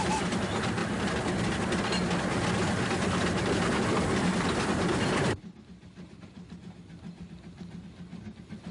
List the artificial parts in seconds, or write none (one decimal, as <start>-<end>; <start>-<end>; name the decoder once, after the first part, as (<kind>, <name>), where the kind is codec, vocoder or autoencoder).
none